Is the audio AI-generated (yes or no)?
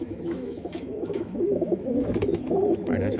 yes